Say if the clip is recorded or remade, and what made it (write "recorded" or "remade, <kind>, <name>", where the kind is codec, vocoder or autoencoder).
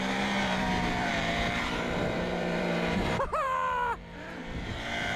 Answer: remade, vocoder, BigVGAN v2